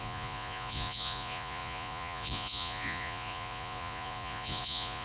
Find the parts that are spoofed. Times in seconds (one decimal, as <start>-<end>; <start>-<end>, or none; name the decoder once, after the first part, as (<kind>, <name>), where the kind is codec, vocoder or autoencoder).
0.0-5.0 (vocoder, Vocos)